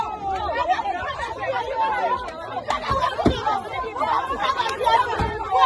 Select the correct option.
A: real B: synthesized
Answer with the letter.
A